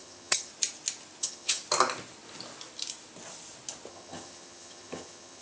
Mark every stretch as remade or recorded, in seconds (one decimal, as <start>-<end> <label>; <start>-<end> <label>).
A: 0.0-0.5 remade; 0.5-1.2 recorded; 1.2-1.6 remade; 1.6-3.9 recorded; 3.9-5.4 remade